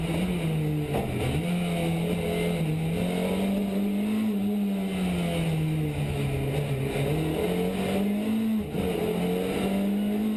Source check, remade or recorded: recorded